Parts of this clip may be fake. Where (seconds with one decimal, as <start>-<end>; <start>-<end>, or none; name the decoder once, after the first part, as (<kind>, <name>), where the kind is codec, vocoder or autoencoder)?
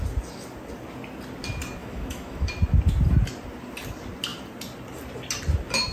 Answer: 1.8-2.5 (autoencoder, DAC-VAE)